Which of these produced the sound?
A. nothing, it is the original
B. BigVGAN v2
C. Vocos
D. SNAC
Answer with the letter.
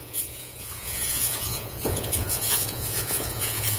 C